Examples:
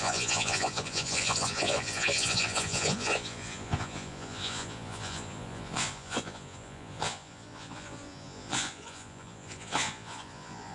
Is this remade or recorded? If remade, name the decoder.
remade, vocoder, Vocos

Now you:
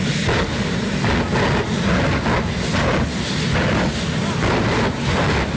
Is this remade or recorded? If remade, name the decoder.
recorded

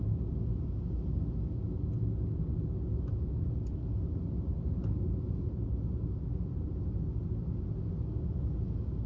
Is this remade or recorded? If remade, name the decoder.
recorded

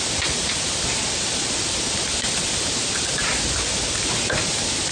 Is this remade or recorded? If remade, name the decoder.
recorded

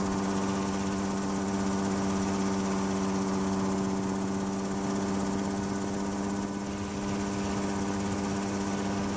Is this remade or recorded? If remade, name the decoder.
recorded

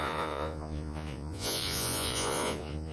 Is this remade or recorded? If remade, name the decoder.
remade, vocoder, Vocos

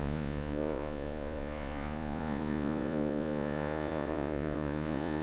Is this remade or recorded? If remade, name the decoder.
remade, vocoder, Vocos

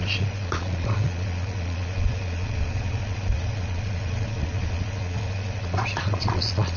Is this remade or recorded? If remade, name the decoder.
remade, vocoder, Vocos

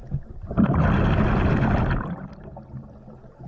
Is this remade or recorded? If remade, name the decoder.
recorded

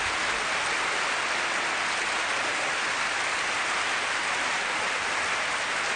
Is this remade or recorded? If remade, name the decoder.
recorded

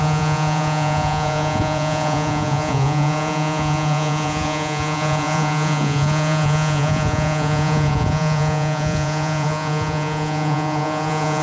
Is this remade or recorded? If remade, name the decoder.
remade, vocoder, Vocos